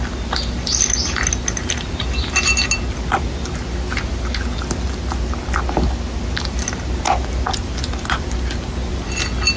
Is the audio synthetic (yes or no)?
no